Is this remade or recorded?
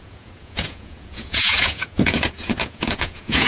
remade